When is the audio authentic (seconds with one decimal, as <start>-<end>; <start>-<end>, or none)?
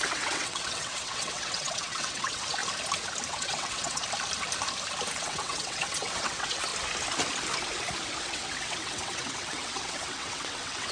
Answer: 2.6-3.3; 4.0-5.2; 6.7-8.2